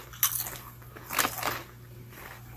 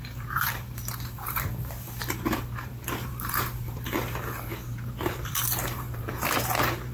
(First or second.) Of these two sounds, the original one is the first